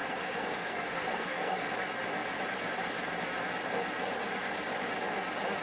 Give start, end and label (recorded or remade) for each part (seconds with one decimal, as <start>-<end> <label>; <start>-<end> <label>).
0.0-1.7 remade; 1.7-5.6 recorded

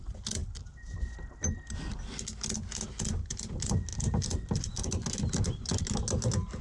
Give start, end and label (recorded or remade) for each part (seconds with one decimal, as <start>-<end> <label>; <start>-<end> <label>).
0.0-6.6 recorded

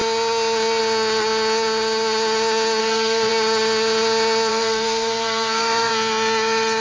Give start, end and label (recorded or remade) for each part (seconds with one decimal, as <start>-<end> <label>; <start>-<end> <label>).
0.0-2.8 recorded; 2.8-3.3 remade; 3.3-4.5 recorded; 4.5-5.9 remade; 5.9-6.8 recorded

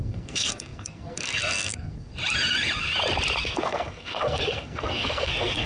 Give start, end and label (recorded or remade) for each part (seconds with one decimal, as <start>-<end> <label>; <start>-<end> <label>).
0.0-2.1 remade; 2.1-3.4 recorded; 3.4-5.7 remade